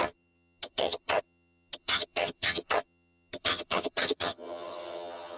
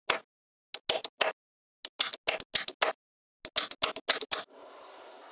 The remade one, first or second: first